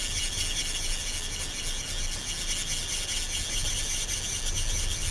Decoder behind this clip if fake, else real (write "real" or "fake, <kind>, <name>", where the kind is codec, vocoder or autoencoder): real